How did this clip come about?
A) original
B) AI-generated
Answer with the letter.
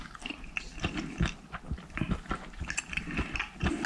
A